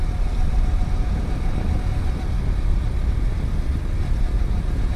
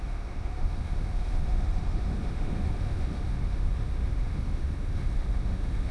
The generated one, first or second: second